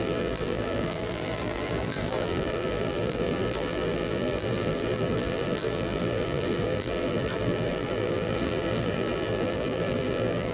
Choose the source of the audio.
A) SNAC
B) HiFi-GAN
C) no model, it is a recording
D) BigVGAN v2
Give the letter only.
D